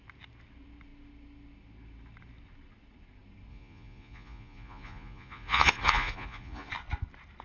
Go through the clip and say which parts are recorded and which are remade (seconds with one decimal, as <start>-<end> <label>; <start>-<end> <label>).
0.0-3.5 recorded; 3.5-6.7 remade; 6.7-7.4 recorded